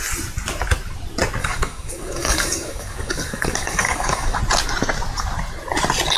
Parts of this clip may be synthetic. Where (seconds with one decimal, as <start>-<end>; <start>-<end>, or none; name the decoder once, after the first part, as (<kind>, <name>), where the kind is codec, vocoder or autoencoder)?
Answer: 1.4-4.4 (codec, DAC)